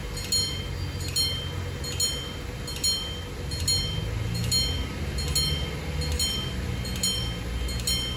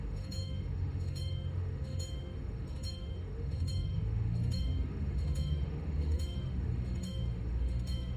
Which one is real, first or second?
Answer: first